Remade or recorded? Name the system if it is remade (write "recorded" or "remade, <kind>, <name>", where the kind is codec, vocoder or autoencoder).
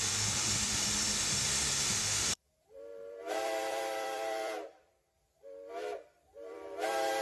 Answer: remade, vocoder, BigVGAN v2